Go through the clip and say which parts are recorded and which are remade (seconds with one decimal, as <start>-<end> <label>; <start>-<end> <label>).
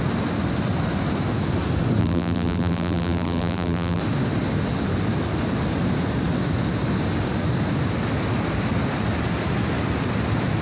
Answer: 0.0-2.0 recorded; 2.0-4.0 remade; 4.0-10.6 recorded